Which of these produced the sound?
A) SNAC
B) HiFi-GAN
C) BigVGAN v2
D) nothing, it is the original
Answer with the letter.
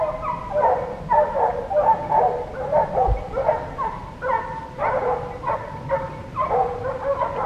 D